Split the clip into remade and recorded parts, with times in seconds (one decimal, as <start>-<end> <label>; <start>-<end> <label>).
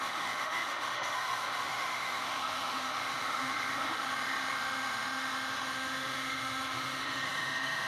0.0-7.9 remade